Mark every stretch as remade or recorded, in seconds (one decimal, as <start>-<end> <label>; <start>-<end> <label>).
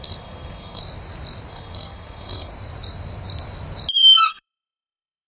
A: 0.0-0.8 remade; 0.8-1.5 recorded; 1.5-2.5 remade; 2.5-4.3 recorded; 4.3-5.3 remade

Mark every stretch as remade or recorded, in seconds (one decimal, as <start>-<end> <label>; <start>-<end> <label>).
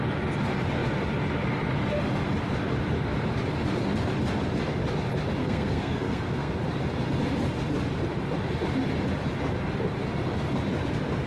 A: 0.0-5.4 recorded; 5.4-6.5 remade; 6.5-11.3 recorded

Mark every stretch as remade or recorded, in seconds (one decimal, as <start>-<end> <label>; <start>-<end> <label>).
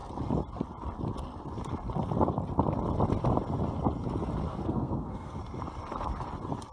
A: 0.0-4.5 recorded; 4.5-5.4 remade; 5.4-6.7 recorded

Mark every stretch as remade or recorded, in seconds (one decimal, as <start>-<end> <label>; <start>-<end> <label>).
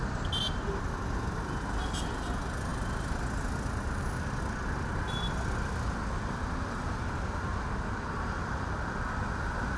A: 0.0-9.8 recorded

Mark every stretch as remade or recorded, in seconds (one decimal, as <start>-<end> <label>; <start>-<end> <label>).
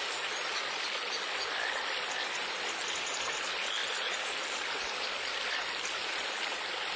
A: 0.0-7.0 recorded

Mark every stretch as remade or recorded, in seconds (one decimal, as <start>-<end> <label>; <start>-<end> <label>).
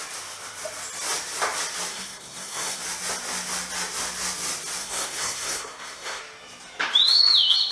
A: 0.0-1.9 recorded; 1.9-2.8 remade; 2.8-4.8 recorded; 4.8-6.2 remade; 6.2-7.7 recorded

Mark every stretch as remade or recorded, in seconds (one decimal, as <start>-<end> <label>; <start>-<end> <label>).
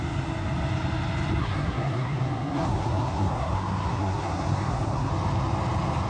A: 0.0-1.4 recorded; 1.4-5.1 remade; 5.1-6.1 recorded